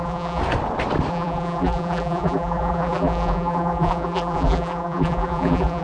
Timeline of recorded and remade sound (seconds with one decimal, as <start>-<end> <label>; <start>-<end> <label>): 0.0-0.4 remade; 0.4-1.1 recorded; 1.1-5.8 remade